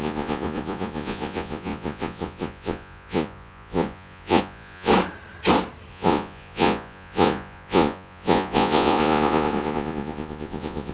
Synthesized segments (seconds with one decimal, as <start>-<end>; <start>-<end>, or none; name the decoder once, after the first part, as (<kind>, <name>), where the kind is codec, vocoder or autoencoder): 0.0-4.9 (vocoder, Vocos); 5.9-10.9